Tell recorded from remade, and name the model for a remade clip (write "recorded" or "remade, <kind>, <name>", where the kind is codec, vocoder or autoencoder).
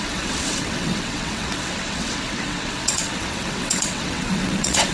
remade, vocoder, WaveNeXt